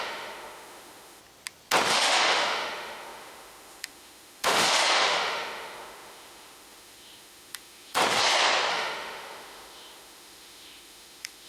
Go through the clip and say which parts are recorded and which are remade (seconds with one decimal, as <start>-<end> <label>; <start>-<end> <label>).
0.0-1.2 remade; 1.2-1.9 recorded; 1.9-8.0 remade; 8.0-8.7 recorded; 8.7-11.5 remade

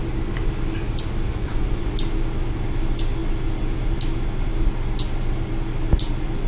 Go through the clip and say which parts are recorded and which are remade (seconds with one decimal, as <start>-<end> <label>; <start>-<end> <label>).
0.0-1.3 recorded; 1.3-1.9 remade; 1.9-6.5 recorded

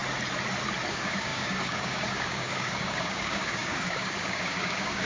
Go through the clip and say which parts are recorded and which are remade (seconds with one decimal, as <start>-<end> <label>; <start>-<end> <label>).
0.0-0.9 recorded; 0.9-5.1 remade

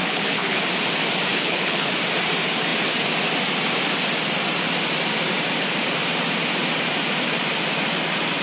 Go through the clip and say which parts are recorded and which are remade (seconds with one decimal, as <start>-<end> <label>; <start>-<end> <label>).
0.0-0.6 remade; 0.6-1.3 recorded; 1.3-1.9 remade; 1.9-8.4 recorded

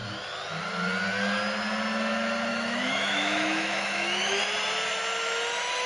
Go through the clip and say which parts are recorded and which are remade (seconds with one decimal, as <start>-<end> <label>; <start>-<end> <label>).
0.0-2.5 recorded; 2.5-4.4 remade; 4.4-5.9 recorded